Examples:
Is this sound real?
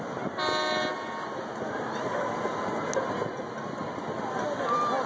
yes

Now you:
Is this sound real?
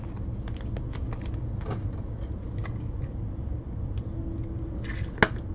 yes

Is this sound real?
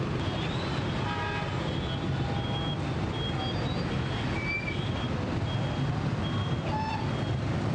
yes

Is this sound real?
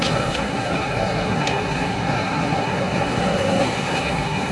no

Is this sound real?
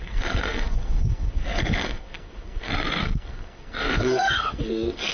no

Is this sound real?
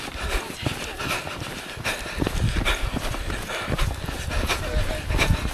yes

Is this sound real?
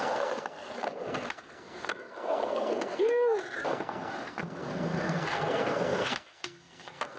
no